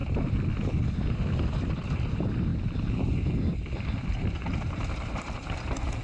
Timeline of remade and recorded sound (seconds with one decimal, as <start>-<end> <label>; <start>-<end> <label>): 0.0-6.0 recorded